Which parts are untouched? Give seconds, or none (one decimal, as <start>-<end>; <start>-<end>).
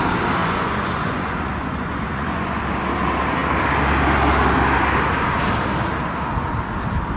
0.0-0.4; 2.6-7.2